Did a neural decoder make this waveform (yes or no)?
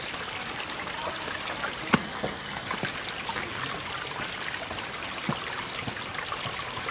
no